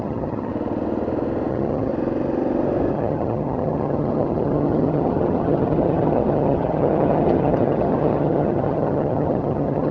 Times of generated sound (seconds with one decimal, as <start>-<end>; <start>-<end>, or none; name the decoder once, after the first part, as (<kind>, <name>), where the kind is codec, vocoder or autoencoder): 0.0-0.5 (vocoder, HiFi-GAN); 1.5-1.9; 2.9-9.9